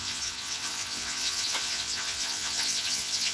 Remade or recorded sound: remade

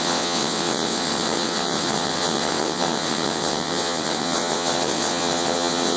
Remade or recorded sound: remade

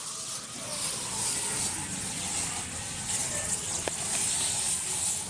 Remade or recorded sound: recorded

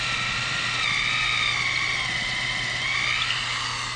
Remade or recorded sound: recorded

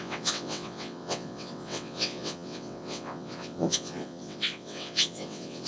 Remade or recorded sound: remade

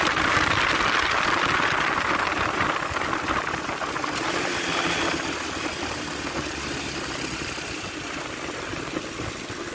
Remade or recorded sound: recorded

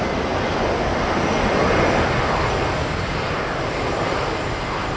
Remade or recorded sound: recorded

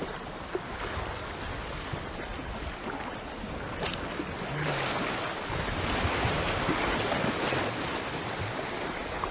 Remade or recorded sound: recorded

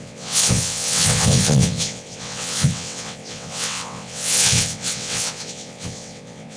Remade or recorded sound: remade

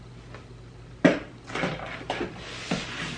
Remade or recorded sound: recorded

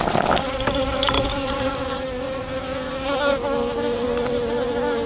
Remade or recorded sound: recorded